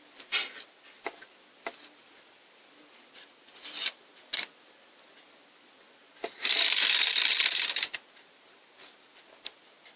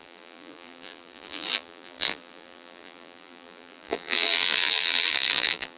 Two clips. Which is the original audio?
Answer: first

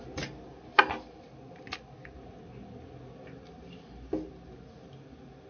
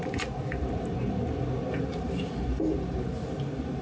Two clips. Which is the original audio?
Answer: first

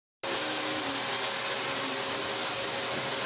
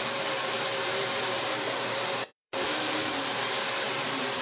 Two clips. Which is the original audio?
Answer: first